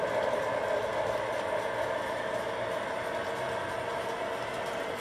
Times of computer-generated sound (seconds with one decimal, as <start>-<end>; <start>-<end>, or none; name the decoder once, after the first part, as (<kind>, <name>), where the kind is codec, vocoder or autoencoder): none